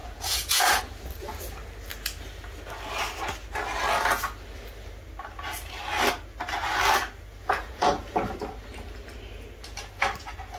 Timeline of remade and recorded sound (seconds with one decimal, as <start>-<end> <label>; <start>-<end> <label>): 0.0-0.8 remade; 0.8-7.4 recorded; 7.4-7.9 remade; 7.9-10.6 recorded